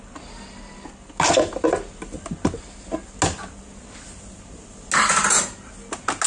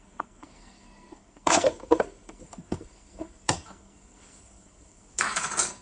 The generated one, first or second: second